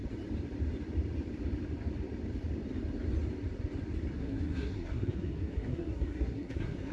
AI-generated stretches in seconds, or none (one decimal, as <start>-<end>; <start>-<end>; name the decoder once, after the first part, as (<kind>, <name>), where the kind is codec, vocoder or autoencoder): 4.1-6.9 (codec, SNAC)